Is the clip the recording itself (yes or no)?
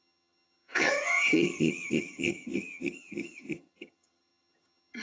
no